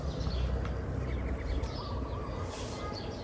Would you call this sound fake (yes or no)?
no